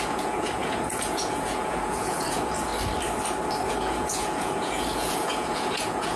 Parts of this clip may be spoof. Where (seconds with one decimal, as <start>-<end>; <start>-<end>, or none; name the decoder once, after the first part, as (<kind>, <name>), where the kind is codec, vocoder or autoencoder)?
0.0-2.7 (vocoder, Vocos); 3.7-6.2